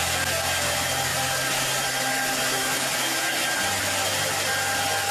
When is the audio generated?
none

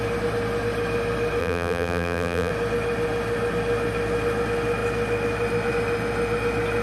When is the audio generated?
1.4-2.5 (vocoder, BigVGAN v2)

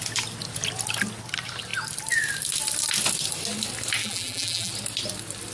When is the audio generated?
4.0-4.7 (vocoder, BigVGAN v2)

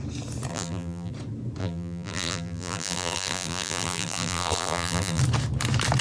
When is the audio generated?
0.5-1.1 (vocoder, BigVGAN v2); 1.6-5.2

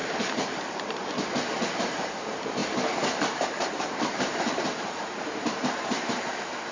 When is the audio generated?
0.0-2.1 (vocoder, BigVGAN v2); 2.6-6.2